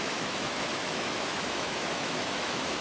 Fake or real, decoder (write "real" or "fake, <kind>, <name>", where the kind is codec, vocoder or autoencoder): fake, autoencoder, DAC-VAE